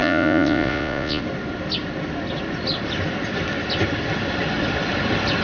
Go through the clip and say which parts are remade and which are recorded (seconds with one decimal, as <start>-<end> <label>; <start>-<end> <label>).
0.0-1.2 remade; 1.2-5.4 recorded